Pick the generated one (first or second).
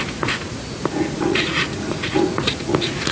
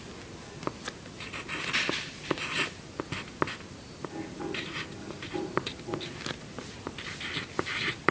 first